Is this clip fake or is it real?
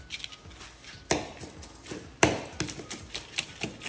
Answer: real